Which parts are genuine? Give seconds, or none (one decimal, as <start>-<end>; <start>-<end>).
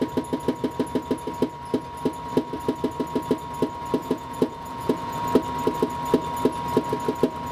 0.0-4.0; 5.2-7.5